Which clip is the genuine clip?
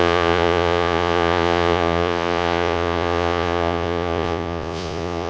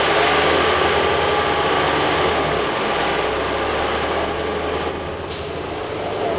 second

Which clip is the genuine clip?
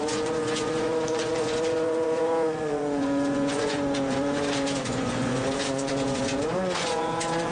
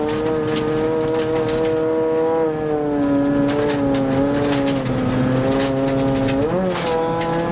second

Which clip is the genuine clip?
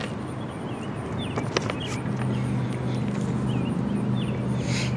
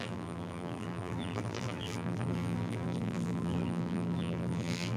first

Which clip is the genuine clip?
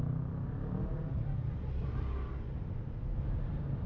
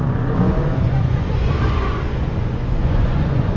first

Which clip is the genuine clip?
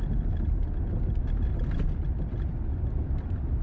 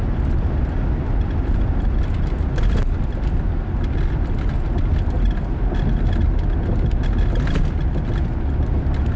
second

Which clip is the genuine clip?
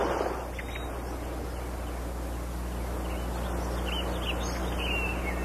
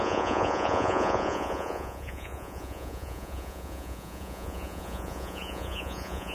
first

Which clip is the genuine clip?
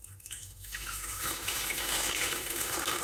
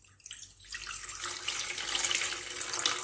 second